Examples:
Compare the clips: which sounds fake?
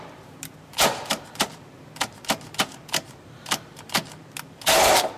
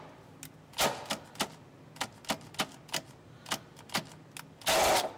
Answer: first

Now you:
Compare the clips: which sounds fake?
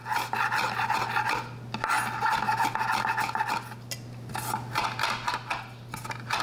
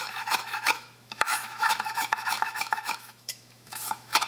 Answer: second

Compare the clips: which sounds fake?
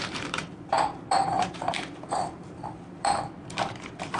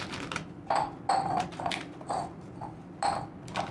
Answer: first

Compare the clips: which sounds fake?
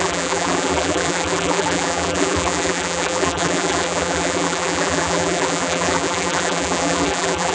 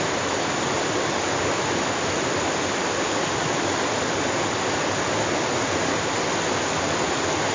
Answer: first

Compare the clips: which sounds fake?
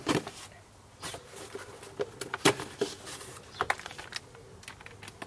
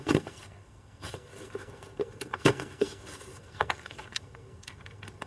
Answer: second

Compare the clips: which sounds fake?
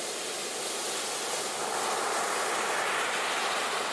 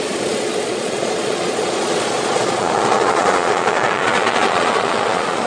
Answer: second